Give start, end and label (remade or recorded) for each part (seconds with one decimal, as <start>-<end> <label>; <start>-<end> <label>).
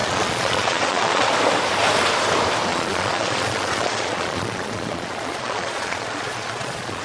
0.0-1.3 remade; 1.3-2.7 recorded; 2.7-7.0 remade